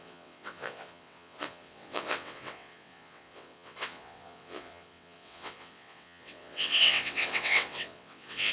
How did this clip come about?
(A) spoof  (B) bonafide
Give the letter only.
A